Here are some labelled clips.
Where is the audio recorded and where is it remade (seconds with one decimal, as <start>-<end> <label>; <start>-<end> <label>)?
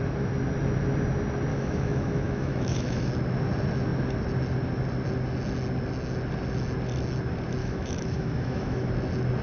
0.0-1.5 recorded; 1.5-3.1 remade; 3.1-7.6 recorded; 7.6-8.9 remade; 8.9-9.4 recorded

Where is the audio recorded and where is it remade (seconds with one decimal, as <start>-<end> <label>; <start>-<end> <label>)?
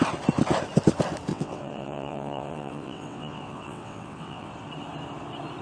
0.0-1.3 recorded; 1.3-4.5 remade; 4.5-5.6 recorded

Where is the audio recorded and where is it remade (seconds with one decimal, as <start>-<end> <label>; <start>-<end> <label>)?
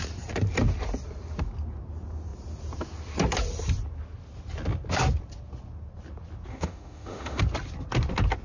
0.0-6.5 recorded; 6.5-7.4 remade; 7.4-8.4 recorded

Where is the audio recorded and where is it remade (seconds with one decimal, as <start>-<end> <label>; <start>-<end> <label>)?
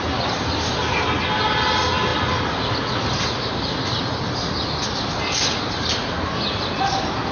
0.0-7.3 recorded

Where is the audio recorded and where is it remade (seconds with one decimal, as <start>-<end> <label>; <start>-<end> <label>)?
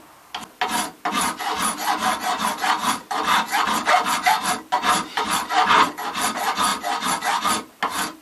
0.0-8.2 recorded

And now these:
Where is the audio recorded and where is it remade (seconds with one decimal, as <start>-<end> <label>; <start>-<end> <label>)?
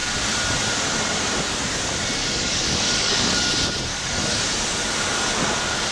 0.0-2.2 recorded; 2.2-3.5 remade; 3.5-3.9 recorded; 3.9-4.4 remade; 4.4-5.9 recorded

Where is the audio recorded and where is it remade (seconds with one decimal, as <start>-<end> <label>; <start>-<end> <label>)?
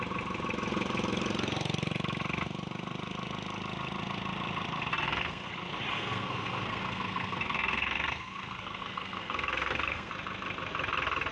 0.0-4.9 recorded; 4.9-5.5 remade; 5.5-5.9 recorded; 5.9-10.1 remade; 10.1-11.3 recorded